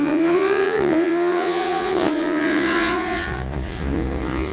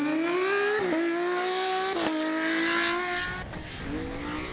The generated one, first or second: first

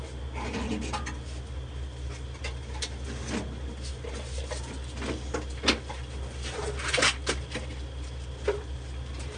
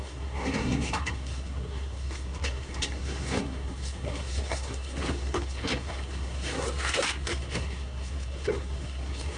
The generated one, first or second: second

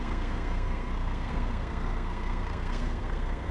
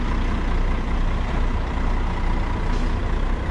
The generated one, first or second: first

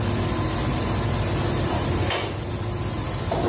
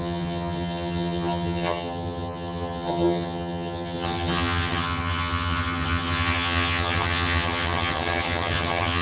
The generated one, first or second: second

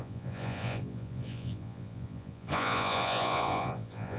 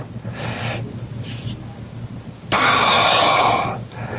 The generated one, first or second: first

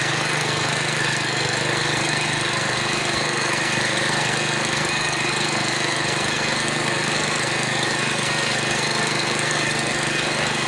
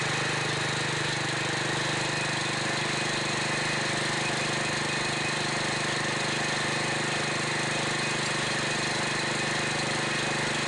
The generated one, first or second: first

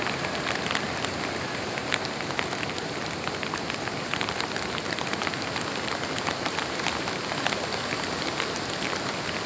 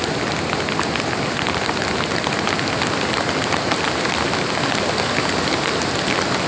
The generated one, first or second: first